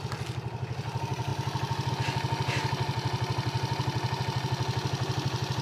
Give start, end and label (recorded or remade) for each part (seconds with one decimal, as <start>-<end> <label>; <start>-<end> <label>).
0.0-5.6 recorded